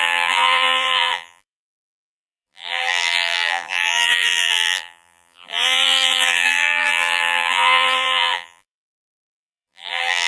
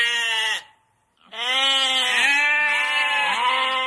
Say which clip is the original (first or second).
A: second